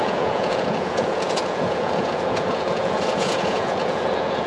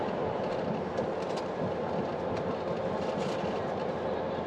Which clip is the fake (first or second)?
first